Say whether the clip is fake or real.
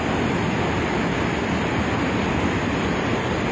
real